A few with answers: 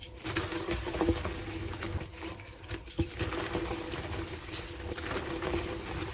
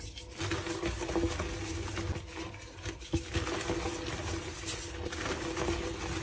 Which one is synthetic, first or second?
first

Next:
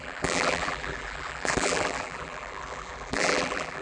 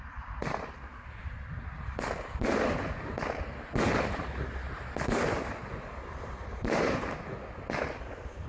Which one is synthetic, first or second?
first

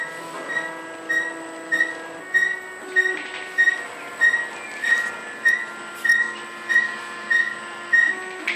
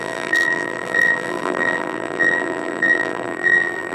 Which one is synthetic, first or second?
second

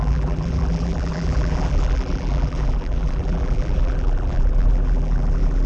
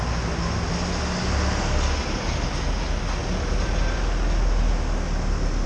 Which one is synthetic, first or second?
first